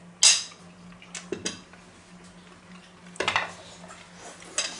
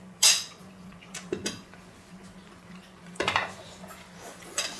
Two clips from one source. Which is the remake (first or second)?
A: second